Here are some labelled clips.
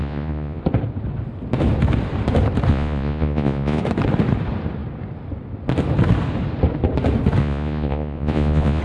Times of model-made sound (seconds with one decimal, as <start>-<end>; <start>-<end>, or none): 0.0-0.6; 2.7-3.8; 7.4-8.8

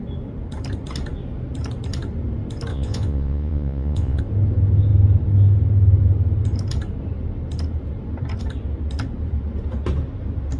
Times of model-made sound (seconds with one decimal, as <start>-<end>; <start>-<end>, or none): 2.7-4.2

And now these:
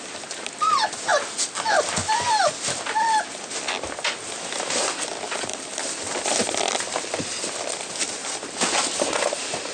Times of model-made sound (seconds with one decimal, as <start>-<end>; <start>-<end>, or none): none